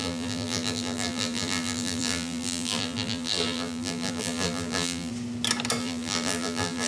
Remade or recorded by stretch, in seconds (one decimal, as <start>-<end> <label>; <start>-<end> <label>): 0.0-5.1 remade; 5.1-5.8 recorded; 5.8-6.9 remade